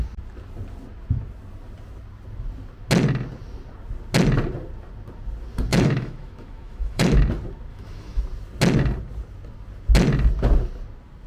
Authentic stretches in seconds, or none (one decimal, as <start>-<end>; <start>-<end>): 0.0-5.7; 7.2-7.7; 8.2-11.3